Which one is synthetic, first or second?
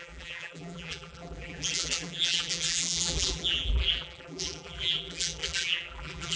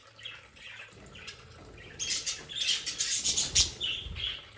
first